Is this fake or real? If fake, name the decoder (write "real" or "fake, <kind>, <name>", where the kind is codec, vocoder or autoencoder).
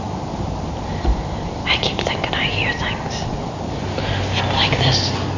real